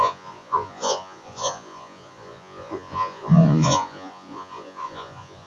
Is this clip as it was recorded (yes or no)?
no